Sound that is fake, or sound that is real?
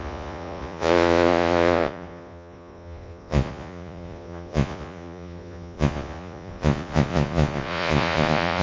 fake